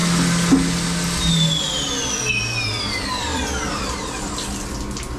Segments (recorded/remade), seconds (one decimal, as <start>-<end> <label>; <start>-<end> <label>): 0.0-3.3 recorded; 3.3-4.3 remade; 4.3-5.2 recorded